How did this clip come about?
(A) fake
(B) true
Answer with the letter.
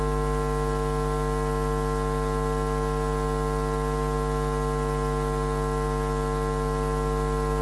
B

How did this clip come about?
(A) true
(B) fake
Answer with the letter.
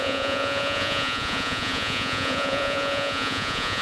B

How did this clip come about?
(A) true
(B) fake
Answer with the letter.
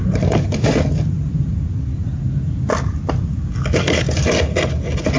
A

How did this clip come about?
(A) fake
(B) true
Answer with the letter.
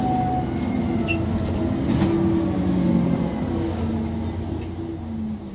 B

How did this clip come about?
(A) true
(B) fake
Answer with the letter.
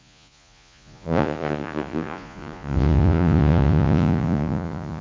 B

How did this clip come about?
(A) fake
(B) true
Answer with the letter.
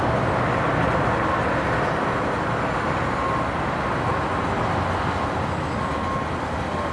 B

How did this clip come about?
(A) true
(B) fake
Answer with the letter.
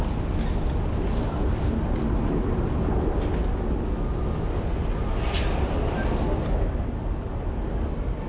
A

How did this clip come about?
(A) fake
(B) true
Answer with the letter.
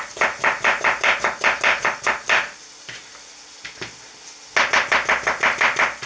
B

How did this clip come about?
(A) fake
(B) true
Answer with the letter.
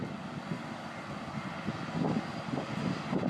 B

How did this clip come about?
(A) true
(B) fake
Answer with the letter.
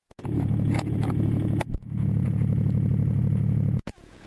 B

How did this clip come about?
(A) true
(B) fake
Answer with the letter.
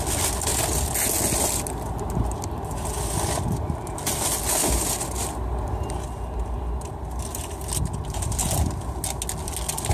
A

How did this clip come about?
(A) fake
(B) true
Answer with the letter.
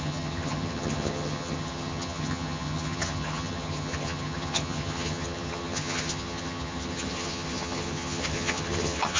A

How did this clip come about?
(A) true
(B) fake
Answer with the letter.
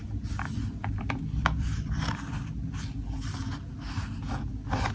A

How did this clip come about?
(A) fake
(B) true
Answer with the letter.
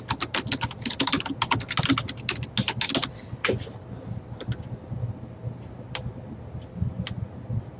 B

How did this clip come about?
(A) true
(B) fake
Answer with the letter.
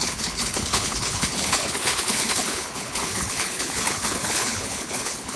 B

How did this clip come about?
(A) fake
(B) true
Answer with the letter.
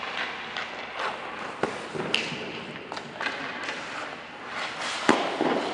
B